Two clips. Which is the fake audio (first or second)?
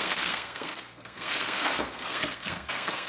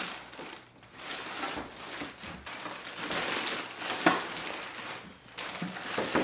first